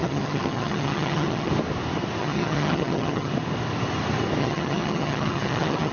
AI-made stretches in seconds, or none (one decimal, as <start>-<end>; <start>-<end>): 0.0-1.5; 2.2-3.3; 4.4-5.9

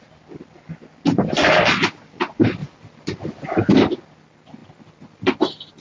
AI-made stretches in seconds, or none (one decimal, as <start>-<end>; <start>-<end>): none

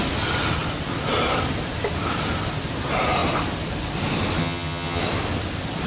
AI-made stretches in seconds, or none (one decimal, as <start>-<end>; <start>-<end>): 4.4-5.0

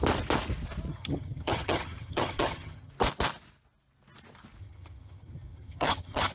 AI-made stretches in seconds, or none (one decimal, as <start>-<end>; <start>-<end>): 0.9-2.9; 4.6-6.3